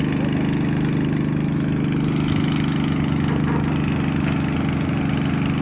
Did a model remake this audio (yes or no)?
no